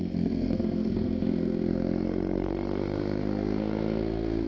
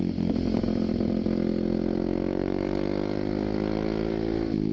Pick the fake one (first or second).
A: first